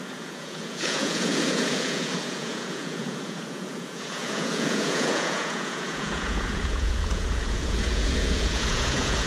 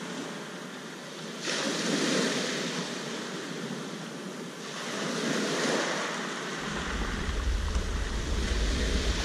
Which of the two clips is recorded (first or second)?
second